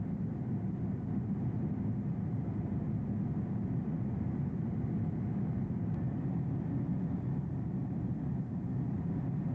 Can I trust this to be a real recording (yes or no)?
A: yes